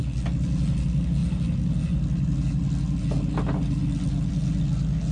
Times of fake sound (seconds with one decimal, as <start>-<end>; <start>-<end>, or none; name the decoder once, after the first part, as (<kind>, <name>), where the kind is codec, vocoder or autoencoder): none